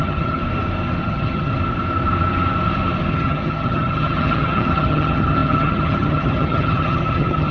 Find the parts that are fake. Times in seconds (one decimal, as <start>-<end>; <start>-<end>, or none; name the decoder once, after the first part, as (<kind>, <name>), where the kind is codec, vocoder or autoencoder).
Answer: 0.0-0.4 (vocoder, HiFi-GAN); 1.0-1.5; 3.1-7.5